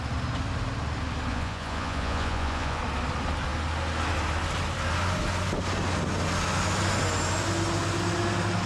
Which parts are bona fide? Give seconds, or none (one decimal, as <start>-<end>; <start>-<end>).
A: 0.0-1.3; 2.8-8.7